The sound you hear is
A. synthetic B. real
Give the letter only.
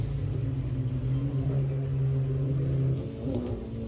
B